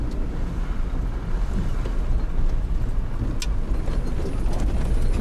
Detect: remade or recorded recorded